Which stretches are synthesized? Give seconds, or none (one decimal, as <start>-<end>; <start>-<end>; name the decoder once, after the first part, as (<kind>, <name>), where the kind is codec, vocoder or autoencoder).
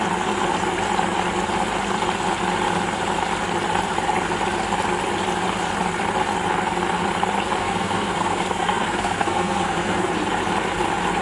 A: 7.6-10.1 (codec, SNAC)